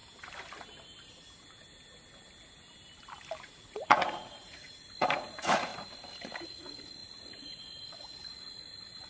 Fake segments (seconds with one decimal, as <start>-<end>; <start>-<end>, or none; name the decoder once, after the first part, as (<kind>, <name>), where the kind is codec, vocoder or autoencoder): 3.4-5.7 (vocoder, Vocos); 6.5-9.1

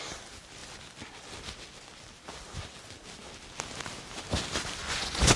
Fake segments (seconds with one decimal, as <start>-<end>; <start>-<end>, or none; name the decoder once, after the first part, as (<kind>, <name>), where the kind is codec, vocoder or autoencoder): 4.8-5.4 (vocoder, Vocos)

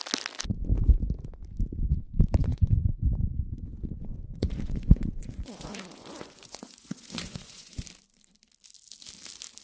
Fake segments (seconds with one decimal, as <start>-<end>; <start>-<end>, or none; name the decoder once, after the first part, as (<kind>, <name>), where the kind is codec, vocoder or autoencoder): 2.4-3.2 (vocoder, Vocos); 4.3-7.8